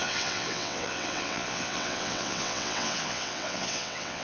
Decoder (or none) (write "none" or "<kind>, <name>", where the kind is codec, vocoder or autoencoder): vocoder, WaveNeXt